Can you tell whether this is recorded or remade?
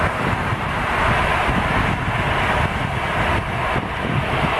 recorded